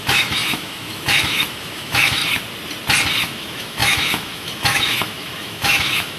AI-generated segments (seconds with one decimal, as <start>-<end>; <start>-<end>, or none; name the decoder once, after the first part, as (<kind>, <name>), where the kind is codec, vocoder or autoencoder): 0.0-2.2 (autoencoder, DAC-VAE); 3.2-6.2